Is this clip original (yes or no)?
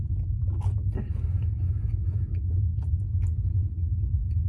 yes